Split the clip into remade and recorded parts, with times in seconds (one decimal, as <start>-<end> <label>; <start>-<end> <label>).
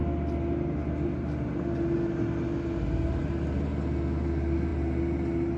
0.0-5.6 recorded